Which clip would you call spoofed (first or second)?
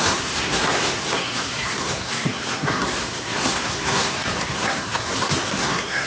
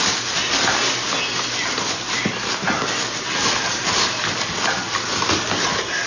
first